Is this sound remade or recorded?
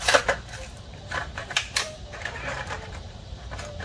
remade